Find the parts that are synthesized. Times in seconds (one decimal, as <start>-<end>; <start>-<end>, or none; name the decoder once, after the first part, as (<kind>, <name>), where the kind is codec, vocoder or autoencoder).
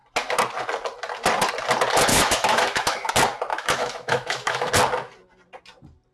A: 2.1-3.1 (autoencoder, DAC-VAE); 3.5-4.7